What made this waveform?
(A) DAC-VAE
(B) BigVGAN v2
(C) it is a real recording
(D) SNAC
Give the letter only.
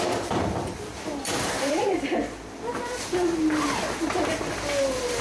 B